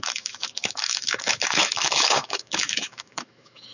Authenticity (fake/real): fake